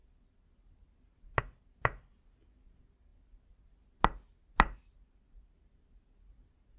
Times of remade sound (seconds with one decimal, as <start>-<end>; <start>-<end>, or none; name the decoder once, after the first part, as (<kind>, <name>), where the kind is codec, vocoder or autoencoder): none